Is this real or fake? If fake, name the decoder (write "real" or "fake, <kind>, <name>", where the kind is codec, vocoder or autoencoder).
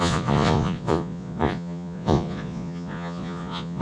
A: fake, vocoder, Vocos